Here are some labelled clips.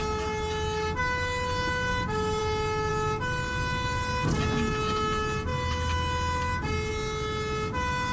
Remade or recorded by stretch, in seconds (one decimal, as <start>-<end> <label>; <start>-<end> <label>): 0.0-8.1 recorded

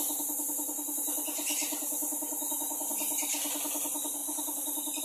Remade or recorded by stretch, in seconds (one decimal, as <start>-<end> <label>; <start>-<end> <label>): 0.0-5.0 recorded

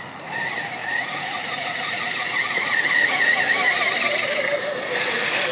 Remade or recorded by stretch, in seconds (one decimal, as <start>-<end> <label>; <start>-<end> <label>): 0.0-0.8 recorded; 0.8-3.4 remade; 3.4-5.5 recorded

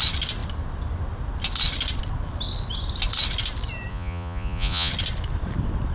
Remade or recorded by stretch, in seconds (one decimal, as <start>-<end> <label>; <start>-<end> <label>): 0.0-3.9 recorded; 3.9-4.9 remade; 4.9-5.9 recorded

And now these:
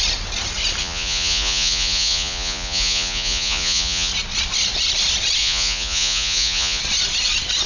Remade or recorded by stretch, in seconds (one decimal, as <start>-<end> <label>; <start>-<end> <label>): 0.0-0.8 recorded; 0.8-4.1 remade; 4.1-5.4 recorded; 5.4-6.8 remade; 6.8-7.7 recorded

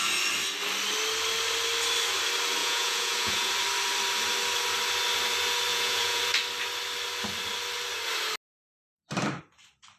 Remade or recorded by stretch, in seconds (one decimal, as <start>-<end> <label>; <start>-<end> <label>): 0.0-2.6 recorded; 2.6-3.5 remade; 3.5-5.7 recorded; 5.7-6.2 remade; 6.2-10.0 recorded

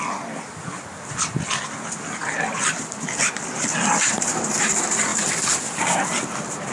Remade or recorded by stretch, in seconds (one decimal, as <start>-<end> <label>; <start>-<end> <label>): 0.0-2.2 recorded; 2.2-3.3 remade; 3.3-5.1 recorded; 5.1-5.8 remade; 5.8-6.7 recorded

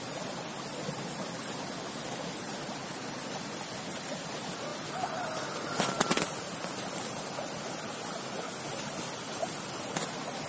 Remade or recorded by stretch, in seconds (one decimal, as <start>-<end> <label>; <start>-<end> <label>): 0.0-10.5 recorded